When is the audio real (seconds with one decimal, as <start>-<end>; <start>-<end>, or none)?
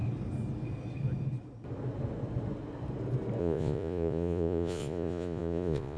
0.0-3.4